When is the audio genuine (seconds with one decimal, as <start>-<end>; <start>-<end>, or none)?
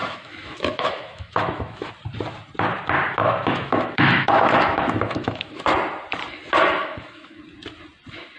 1.9-3.2; 5.6-6.8; 7.4-8.4